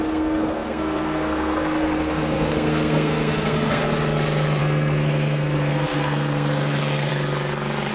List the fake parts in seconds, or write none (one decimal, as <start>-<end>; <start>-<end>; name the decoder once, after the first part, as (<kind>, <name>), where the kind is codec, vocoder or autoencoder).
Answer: 0.0-3.8 (codec, SNAC); 4.6-7.1